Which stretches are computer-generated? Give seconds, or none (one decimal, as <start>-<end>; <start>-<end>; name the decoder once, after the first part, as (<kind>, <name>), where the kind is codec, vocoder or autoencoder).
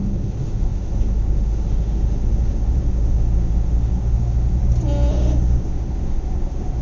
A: 0.0-4.6 (autoencoder, DAC-VAE); 5.1-6.8